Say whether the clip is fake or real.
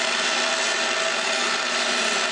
real